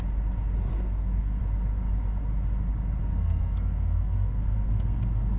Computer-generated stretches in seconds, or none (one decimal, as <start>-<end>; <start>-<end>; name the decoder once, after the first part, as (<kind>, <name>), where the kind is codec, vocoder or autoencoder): 0.7-1.4 (codec, SNAC); 3.0-5.0